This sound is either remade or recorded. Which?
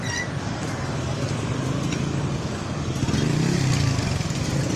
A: recorded